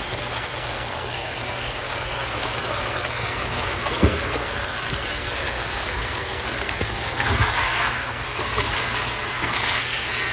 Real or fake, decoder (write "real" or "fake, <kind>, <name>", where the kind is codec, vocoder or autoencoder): fake, codec, SNAC